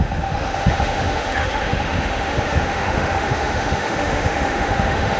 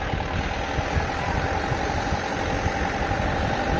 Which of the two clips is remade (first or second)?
first